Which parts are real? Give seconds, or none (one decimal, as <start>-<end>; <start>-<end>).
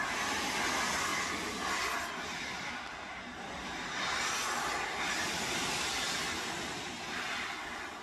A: 0.0-8.0